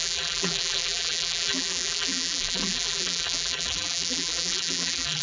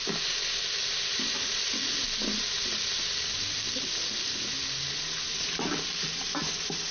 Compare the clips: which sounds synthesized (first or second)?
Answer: first